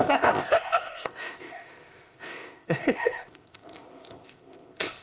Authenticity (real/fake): fake